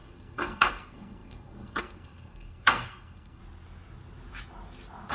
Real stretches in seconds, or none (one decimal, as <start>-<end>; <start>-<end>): 3.4-5.1